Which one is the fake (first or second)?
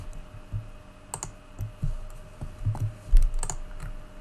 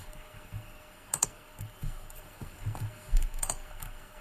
second